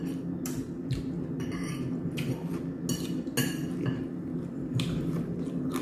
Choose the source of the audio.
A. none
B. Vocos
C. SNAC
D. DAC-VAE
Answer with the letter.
A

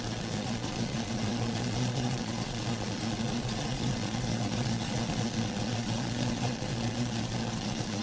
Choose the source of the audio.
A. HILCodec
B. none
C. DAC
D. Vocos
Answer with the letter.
D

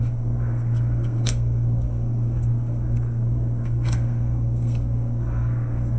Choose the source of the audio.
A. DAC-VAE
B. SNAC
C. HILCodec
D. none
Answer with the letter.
B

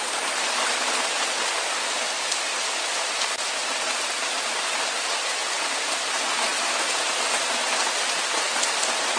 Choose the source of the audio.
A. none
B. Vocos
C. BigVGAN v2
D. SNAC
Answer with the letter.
A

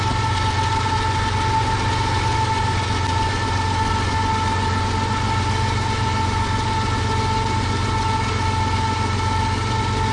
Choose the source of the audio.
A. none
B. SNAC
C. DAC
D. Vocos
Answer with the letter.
A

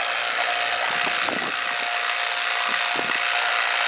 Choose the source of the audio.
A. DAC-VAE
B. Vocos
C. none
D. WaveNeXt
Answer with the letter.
C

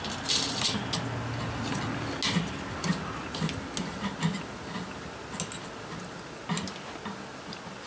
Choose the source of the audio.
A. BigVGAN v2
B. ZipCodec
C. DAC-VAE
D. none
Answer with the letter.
D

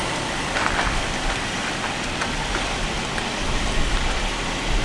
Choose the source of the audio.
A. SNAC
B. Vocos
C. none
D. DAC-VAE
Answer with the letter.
C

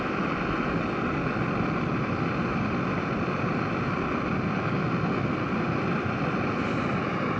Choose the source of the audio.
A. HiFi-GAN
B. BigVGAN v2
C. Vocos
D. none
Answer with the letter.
D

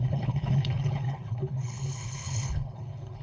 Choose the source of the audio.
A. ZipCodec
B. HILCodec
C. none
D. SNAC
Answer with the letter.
B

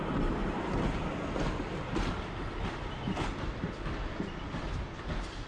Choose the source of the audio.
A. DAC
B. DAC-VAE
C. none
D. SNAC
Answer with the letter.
C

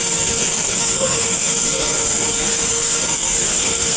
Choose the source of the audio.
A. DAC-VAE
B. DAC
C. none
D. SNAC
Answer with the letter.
D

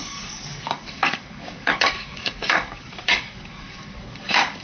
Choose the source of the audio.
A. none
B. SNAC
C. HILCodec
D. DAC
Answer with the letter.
D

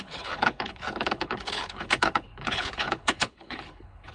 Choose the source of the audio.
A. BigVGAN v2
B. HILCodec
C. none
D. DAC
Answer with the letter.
B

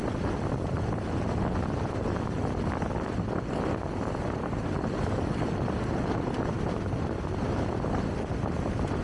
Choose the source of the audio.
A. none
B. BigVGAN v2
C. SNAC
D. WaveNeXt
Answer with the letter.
A